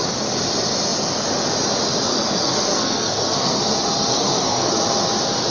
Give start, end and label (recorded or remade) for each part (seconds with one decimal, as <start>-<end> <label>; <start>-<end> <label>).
0.0-2.1 recorded; 2.1-3.6 remade; 3.6-4.1 recorded; 4.1-4.7 remade; 4.7-5.5 recorded